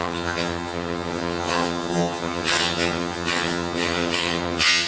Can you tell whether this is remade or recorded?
remade